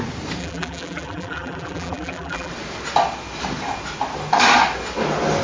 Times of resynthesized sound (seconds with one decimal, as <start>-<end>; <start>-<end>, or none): 0.4-2.5